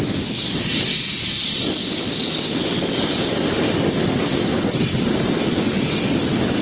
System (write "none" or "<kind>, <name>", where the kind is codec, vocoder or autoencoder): none